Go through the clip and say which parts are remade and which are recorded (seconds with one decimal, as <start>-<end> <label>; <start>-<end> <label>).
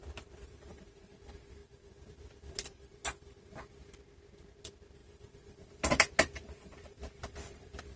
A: 0.0-1.1 remade; 1.1-1.6 recorded; 1.6-3.0 remade; 3.0-5.0 recorded; 5.0-8.0 remade